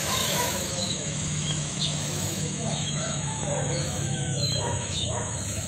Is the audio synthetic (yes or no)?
yes